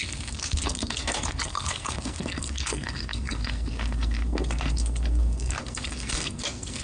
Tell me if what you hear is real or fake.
fake